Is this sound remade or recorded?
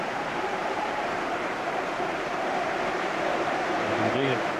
remade